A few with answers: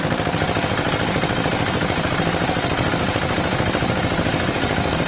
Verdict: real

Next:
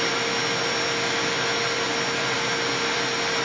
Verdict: real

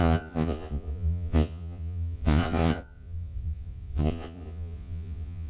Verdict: fake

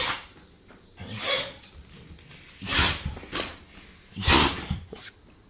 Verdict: real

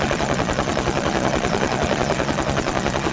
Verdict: fake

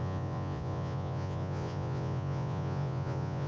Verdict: fake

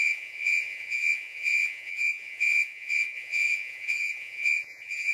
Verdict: fake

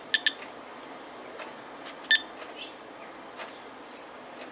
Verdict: real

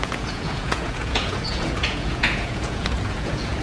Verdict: fake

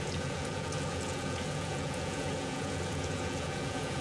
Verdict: fake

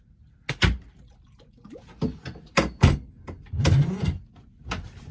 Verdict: real